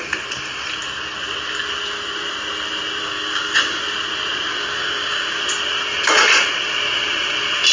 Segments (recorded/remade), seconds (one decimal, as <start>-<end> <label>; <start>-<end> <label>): 0.0-3.0 recorded; 3.0-3.8 remade; 3.8-4.5 recorded; 4.5-5.4 remade; 5.4-7.7 recorded